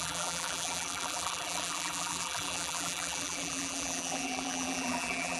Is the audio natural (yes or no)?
no